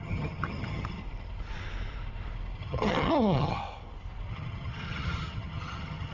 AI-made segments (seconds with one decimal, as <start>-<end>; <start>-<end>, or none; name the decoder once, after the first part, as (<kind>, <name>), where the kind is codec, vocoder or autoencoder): 0.0-1.0 (vocoder, HiFi-GAN); 2.6-3.6; 4.3-6.1